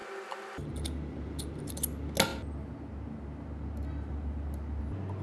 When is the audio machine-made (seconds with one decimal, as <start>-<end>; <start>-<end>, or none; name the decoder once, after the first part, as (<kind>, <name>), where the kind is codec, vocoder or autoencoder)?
none